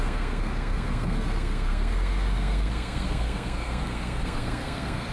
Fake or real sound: fake